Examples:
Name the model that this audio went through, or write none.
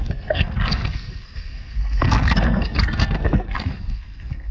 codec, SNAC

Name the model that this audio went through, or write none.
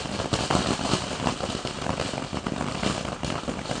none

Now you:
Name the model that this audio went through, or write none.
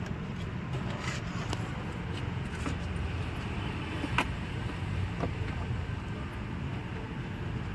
none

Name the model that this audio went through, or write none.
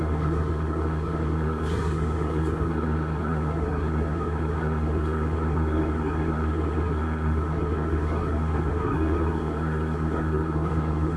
codec, SNAC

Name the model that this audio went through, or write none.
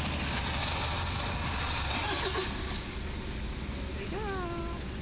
none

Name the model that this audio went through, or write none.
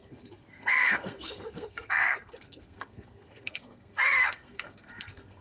codec, SNAC